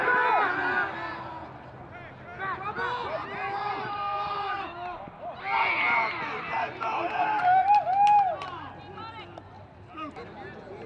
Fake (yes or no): no